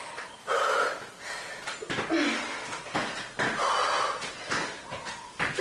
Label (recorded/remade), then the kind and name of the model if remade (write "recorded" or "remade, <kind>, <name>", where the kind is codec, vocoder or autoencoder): recorded